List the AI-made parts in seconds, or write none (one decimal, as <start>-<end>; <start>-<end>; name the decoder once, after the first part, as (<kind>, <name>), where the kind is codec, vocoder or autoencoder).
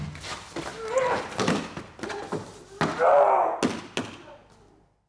none